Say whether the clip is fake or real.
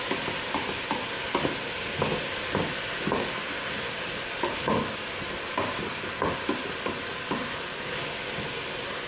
real